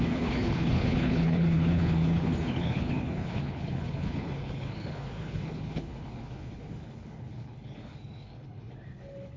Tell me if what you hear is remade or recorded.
remade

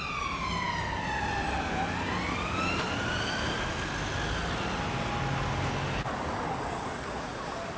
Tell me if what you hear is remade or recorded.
recorded